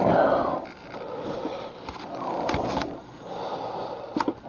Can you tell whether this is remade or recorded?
recorded